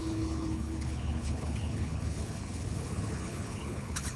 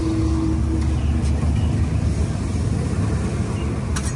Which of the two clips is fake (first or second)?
first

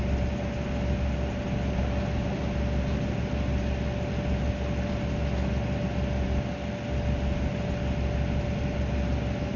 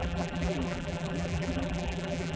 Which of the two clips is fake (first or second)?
second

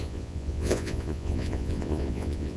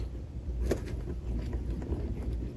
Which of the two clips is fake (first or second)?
first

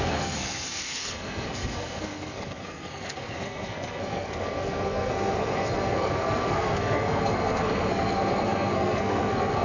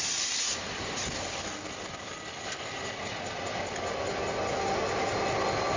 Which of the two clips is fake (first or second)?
first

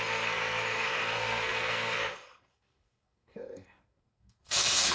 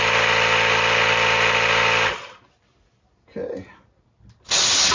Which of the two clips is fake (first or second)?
first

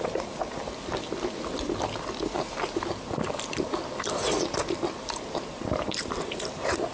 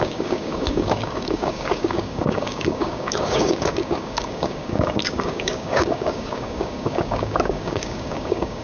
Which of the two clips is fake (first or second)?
second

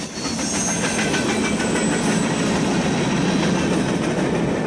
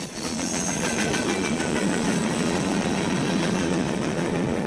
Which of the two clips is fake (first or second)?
second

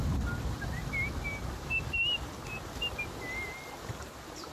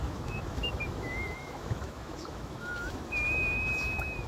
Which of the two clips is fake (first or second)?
second